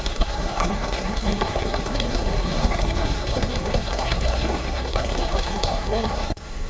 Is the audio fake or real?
fake